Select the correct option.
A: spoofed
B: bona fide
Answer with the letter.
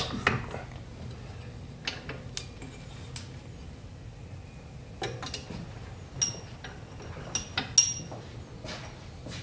B